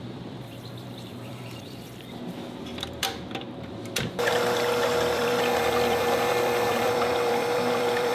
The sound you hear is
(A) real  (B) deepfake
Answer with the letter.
B